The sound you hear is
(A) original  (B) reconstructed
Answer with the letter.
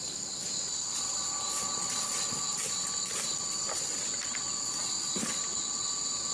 A